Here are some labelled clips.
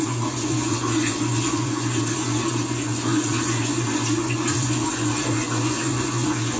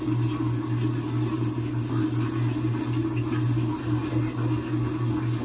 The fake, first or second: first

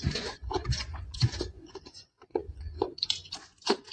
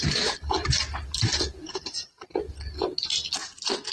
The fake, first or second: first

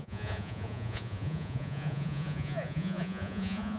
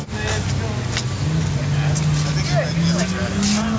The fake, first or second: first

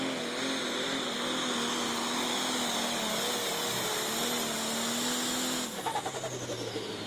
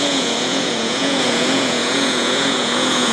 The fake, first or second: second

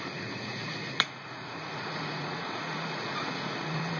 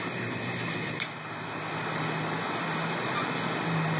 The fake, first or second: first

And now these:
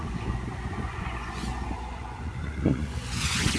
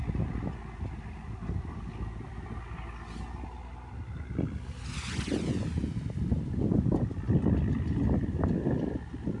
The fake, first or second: first